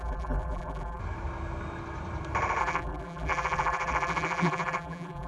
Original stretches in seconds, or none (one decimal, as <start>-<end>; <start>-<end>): 1.0-2.6